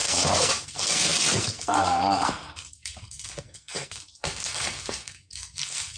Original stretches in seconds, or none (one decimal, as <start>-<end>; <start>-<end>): none